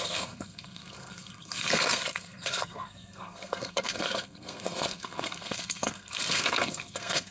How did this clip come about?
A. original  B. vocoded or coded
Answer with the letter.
B